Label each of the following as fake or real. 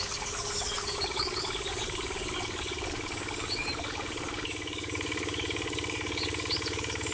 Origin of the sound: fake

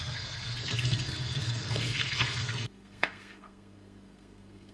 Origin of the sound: fake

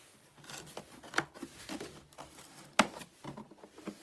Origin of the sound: real